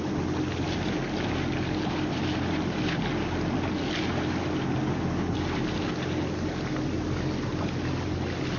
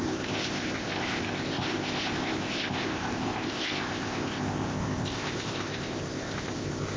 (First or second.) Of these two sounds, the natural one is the first